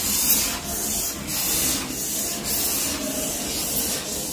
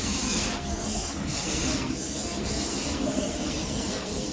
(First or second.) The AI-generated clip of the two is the second